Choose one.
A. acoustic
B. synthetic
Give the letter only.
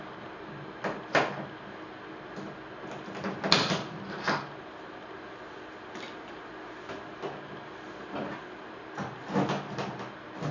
A